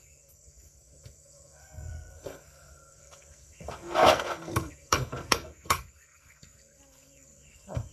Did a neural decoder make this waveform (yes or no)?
yes